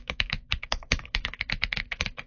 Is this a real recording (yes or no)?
no